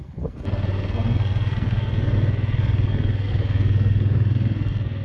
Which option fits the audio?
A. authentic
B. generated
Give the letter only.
B